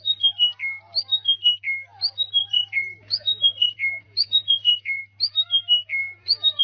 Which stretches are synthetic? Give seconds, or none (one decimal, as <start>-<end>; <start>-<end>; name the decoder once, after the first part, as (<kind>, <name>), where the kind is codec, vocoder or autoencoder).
2.4-5.0 (vocoder, Vocos); 6.0-6.6